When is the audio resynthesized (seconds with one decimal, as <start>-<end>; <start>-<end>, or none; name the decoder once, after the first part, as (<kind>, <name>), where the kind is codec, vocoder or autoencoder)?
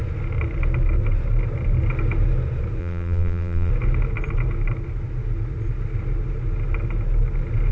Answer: 2.8-3.7 (vocoder, BigVGAN v2)